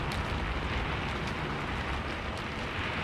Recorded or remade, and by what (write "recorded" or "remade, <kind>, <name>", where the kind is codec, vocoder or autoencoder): recorded